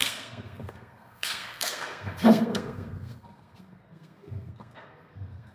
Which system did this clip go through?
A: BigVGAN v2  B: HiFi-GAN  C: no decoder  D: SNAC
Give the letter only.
D